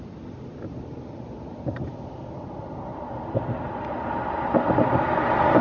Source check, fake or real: real